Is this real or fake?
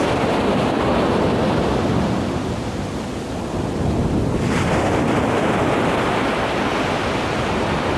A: real